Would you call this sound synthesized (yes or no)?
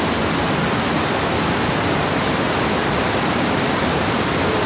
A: no